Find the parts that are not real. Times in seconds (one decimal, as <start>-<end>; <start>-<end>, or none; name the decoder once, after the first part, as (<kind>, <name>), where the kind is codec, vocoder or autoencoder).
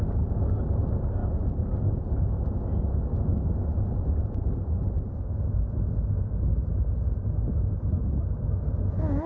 none